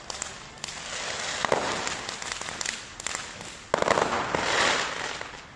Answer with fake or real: real